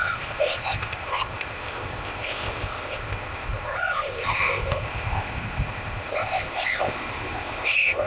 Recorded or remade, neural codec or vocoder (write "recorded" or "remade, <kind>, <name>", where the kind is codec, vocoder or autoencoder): remade, codec, ZipCodec